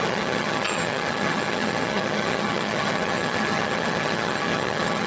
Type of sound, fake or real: fake